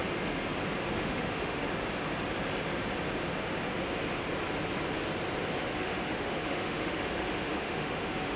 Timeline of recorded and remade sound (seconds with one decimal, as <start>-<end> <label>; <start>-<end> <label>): 0.0-1.0 recorded; 1.0-1.6 remade; 1.6-5.6 recorded; 5.6-8.4 remade